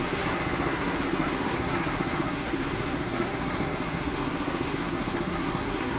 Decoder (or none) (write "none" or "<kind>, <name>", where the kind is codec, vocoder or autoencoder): codec, SNAC